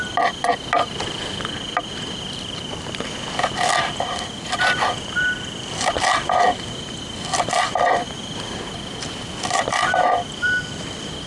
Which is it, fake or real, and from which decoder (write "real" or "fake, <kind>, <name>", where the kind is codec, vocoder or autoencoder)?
real